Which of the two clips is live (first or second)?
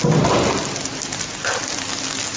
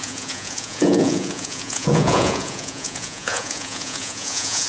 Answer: first